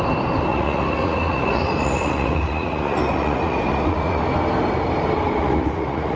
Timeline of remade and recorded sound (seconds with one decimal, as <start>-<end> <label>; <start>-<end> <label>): 0.0-0.5 recorded; 0.5-4.2 remade; 4.2-5.4 recorded; 5.4-6.2 remade